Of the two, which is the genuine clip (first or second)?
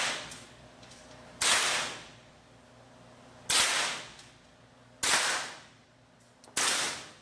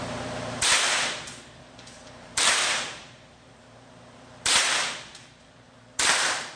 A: first